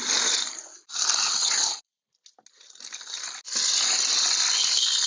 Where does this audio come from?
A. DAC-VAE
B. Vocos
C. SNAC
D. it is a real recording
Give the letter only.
D